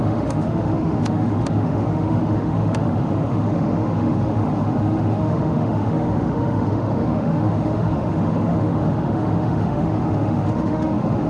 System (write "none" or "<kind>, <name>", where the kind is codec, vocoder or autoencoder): autoencoder, DAC-VAE